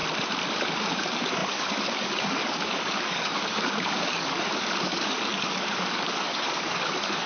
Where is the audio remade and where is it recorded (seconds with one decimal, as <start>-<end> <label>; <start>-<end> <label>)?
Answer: 0.0-0.5 recorded; 0.5-7.3 remade